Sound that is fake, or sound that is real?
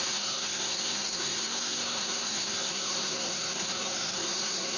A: fake